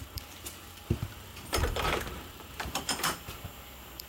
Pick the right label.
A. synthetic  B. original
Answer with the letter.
A